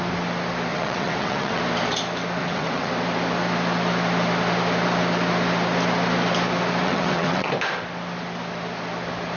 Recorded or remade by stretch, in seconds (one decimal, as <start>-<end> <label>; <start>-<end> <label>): 0.0-0.7 recorded; 0.7-1.6 remade; 1.6-2.4 recorded; 2.4-2.9 remade; 2.9-6.8 recorded; 6.8-7.5 remade; 7.5-9.4 recorded